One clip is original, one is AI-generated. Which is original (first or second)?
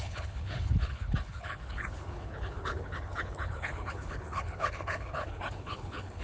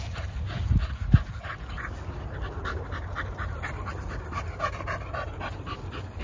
second